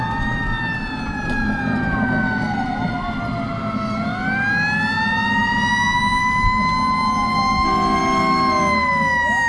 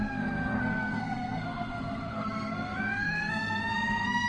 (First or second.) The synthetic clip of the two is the second